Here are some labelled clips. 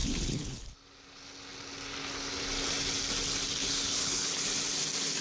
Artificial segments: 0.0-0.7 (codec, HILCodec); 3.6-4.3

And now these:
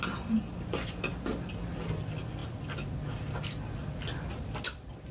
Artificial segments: none